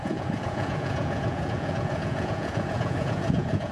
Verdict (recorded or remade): remade